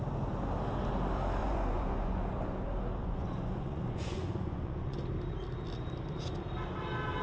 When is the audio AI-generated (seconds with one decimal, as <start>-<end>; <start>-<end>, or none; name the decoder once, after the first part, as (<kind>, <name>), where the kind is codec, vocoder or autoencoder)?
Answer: 1.4-2.2 (vocoder, Vocos); 3.0-5.0